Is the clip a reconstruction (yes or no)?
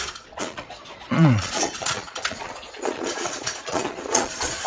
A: yes